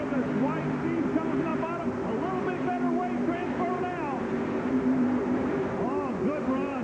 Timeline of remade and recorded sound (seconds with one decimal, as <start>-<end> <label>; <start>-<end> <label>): 0.0-6.8 remade